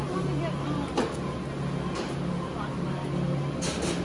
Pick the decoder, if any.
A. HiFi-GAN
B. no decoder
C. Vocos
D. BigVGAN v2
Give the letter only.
B